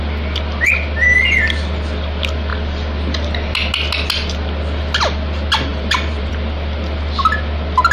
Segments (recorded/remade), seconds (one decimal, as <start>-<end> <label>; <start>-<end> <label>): 0.0-5.7 recorded; 5.7-6.3 remade; 6.3-7.9 recorded